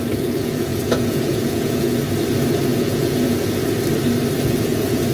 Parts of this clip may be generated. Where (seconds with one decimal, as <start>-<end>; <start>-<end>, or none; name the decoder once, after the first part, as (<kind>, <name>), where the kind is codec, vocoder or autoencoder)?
0.0-2.0 (vocoder, Vocos); 2.7-3.6; 4.4-5.1